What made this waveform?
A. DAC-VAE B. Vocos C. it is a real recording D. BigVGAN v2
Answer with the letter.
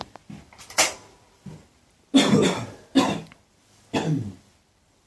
D